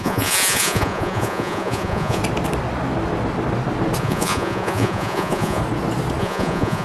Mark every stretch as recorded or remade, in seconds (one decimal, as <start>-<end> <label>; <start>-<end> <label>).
0.0-2.2 remade; 2.2-4.0 recorded; 4.0-5.6 remade; 5.6-6.2 recorded; 6.2-6.8 remade